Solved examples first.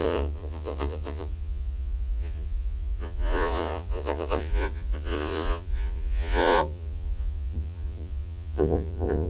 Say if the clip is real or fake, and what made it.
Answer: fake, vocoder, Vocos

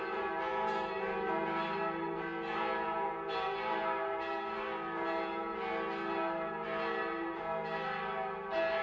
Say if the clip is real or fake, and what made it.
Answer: real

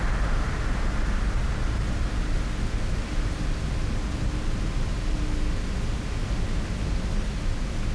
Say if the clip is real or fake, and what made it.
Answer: real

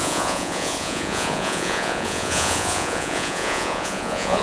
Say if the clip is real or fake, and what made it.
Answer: fake, vocoder, Vocos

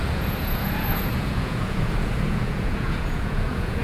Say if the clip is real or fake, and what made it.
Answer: fake, vocoder, Vocos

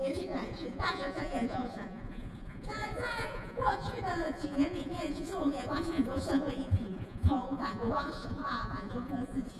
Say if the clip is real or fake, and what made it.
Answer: fake, vocoder, Vocos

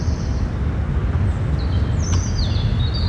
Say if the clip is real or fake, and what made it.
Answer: real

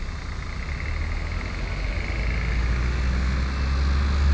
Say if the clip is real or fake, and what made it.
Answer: real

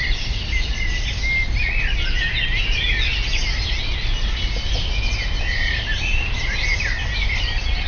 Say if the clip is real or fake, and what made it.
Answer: real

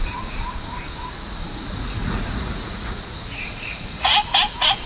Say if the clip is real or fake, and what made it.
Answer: fake, vocoder, Vocos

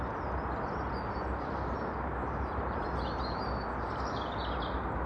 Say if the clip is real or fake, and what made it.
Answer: real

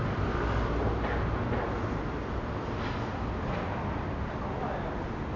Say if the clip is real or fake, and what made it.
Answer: real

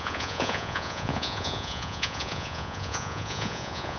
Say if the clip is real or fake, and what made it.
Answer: fake, vocoder, Vocos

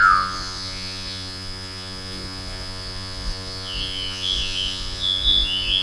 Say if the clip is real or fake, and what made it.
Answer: fake, vocoder, Vocos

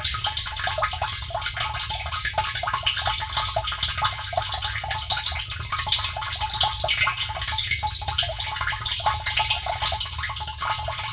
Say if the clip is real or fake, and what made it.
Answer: real